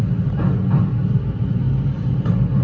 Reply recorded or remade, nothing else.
recorded